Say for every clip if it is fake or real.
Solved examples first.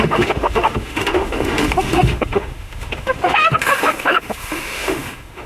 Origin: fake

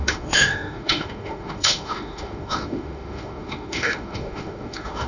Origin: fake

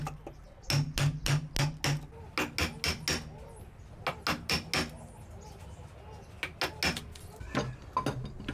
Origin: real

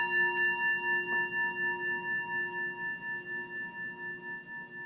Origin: real